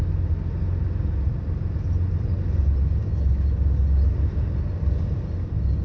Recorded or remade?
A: recorded